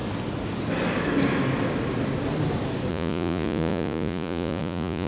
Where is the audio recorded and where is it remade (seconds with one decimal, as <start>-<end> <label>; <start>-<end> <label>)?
0.0-2.9 recorded; 2.9-5.1 remade